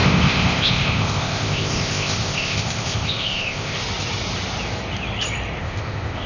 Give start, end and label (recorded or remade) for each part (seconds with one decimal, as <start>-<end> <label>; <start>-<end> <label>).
0.0-3.8 remade; 3.8-5.6 recorded; 5.6-6.3 remade